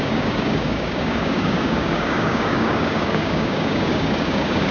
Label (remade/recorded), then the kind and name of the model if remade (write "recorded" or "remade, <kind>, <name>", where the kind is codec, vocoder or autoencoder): remade, codec, DAC